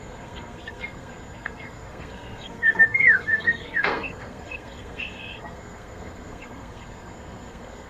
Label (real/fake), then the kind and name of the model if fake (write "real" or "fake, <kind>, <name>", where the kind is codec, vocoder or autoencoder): fake, codec, SNAC